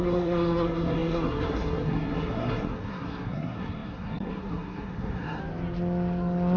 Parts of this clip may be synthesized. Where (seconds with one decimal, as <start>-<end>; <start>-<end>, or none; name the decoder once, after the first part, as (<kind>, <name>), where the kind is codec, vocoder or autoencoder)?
0.0-5.4 (codec, SNAC)